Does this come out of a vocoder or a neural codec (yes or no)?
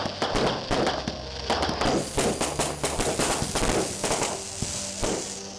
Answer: no